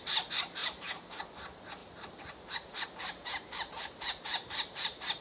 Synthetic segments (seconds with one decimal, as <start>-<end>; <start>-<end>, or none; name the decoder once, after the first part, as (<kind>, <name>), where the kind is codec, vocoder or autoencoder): 0.6-1.1 (vocoder, BigVGAN v2); 1.8-5.2